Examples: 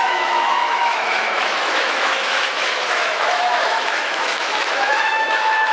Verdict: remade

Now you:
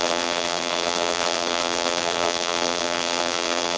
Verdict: remade